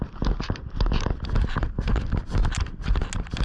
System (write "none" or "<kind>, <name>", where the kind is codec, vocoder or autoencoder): none